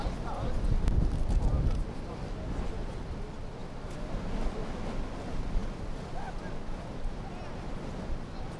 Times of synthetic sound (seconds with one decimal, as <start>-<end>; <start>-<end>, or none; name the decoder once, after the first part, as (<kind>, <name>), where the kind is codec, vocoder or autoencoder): none